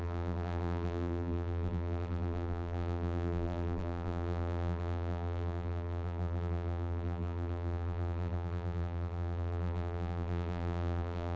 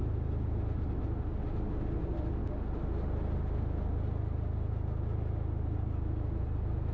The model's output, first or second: first